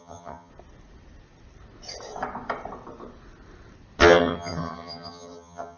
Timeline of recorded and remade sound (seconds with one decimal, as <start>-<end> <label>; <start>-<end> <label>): 0.0-0.5 remade; 0.5-4.0 recorded; 4.0-5.8 remade